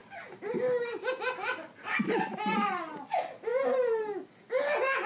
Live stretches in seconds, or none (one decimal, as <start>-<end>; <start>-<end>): 3.0-3.5; 4.3-5.1